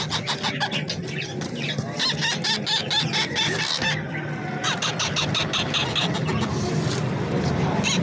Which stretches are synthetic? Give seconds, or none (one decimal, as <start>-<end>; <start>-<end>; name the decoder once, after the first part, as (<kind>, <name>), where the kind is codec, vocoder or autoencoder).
none